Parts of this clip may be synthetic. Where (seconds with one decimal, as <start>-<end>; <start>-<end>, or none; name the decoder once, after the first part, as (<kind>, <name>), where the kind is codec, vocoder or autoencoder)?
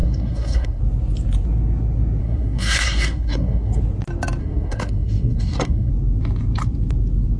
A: 0.0-0.8 (codec, SNAC); 2.2-3.8; 4.4-5.9